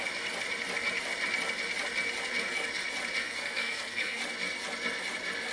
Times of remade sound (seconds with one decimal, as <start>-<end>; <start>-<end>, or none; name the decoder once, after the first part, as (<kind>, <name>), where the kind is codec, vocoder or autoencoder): 3.2-4.2 (codec, SNAC)